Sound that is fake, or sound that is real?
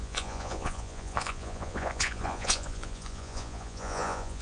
fake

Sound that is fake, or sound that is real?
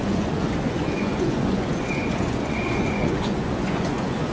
fake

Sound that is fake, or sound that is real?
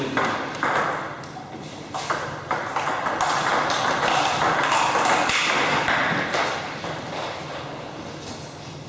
real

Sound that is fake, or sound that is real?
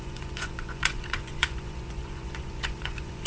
fake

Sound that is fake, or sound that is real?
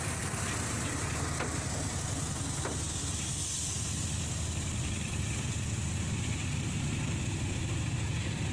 real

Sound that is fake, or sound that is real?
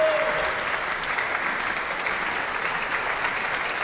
real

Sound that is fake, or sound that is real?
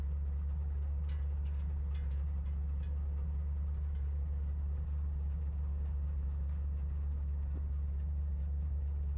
real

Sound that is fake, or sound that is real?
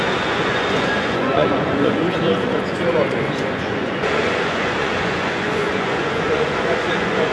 fake